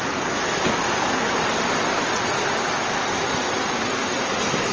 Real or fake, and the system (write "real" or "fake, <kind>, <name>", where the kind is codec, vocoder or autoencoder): real